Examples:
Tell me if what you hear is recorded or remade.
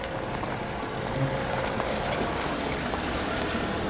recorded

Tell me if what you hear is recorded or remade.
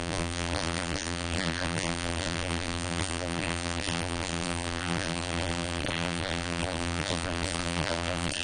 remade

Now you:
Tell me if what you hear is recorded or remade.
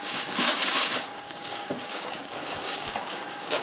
remade